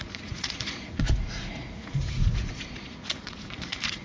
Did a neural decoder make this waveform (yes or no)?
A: yes